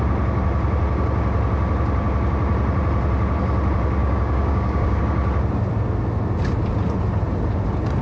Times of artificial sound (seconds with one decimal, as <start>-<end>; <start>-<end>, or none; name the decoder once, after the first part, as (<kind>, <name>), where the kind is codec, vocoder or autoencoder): 4.0-5.0 (codec, DAC)